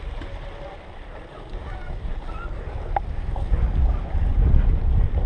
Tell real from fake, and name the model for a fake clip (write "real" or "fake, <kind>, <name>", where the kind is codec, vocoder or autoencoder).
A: real